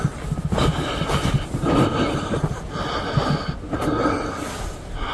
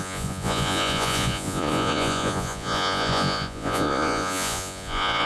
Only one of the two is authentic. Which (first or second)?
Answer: first